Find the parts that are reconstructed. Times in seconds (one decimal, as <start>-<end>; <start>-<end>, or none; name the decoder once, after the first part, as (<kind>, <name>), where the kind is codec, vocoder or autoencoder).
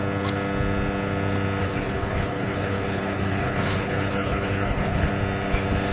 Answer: 1.6-5.1 (codec, HILCodec)